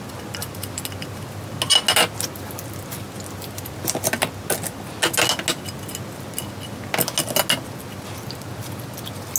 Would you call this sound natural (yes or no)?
yes